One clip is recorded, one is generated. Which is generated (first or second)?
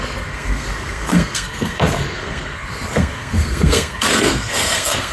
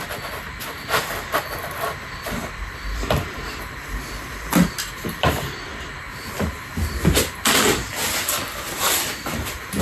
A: first